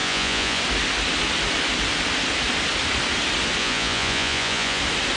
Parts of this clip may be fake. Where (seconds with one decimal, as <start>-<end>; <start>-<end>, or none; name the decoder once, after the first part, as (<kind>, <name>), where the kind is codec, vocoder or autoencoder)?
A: 0.0-0.6 (vocoder, Vocos); 3.6-4.8